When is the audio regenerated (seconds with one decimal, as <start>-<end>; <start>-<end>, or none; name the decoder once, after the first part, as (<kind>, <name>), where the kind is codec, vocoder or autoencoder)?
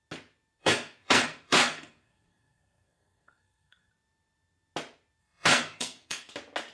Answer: 0.6-3.9 (codec, SNAC); 5.2-6.3